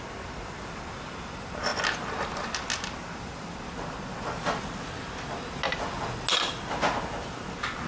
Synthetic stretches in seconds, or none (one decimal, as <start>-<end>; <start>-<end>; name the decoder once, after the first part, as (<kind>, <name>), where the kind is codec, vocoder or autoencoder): none